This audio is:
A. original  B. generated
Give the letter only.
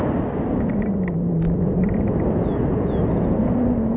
A